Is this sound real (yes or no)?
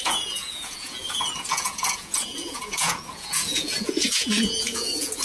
no